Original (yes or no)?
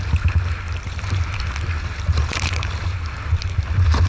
yes